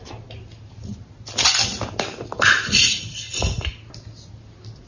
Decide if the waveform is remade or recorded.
recorded